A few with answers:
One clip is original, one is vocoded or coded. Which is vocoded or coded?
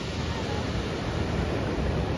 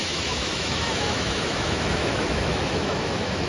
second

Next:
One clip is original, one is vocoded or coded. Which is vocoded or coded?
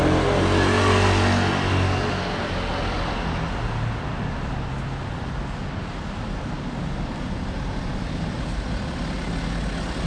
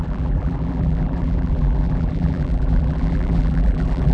second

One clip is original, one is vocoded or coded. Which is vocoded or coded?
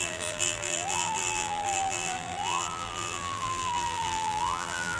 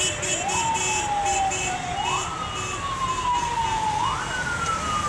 first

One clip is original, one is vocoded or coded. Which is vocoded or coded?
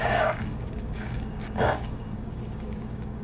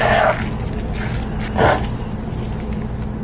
first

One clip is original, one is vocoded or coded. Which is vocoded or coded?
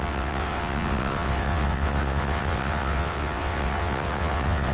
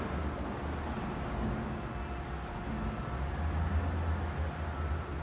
first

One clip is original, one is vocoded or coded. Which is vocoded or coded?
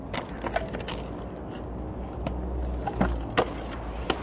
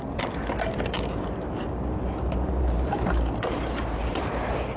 second